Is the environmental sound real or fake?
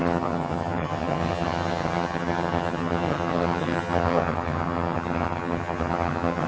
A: fake